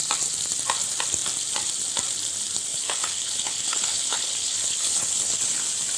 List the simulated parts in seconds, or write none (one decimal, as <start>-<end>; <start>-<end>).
2.7-5.6